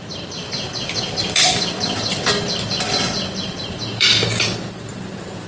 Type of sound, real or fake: fake